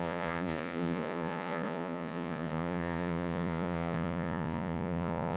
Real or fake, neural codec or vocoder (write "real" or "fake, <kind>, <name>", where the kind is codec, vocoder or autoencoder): fake, vocoder, Vocos